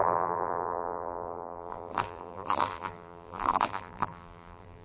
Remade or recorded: remade